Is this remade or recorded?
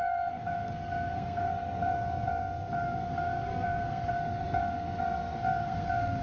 remade